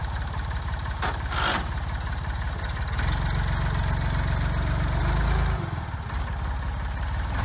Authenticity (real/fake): real